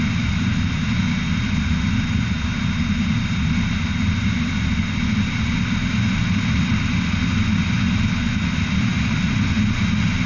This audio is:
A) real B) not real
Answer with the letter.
A